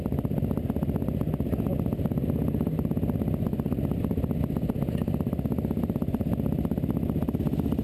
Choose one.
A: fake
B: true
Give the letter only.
B